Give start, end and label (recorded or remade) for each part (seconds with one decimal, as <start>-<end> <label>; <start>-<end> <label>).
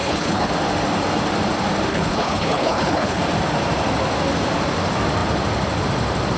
0.0-0.5 remade; 0.5-1.9 recorded; 1.9-3.2 remade; 3.2-6.4 recorded